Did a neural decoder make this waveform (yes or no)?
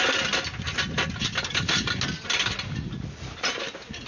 no